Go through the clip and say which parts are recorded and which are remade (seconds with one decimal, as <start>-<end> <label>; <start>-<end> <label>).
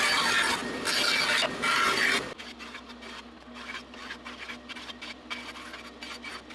0.0-6.5 recorded